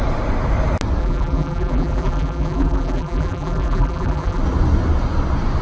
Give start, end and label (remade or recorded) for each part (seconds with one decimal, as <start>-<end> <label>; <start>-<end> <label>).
0.0-1.0 recorded; 1.0-4.4 remade; 4.4-5.6 recorded